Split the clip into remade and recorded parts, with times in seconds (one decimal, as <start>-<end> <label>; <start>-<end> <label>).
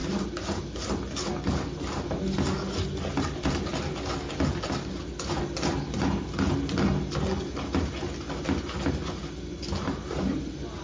0.0-10.8 recorded